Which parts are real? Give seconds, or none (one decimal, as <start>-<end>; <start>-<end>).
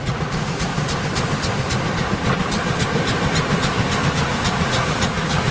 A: 0.7-4.0